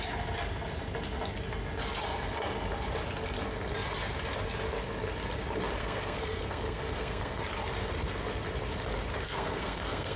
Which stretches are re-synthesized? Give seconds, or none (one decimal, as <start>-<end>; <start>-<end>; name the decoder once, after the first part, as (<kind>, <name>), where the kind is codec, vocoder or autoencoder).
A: 5.8-7.4 (codec, SNAC); 9.1-10.2